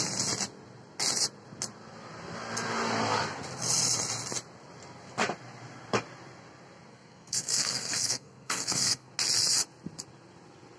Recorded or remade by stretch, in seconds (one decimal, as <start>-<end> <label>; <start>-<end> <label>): 0.0-6.9 recorded; 6.9-9.1 remade; 9.1-10.8 recorded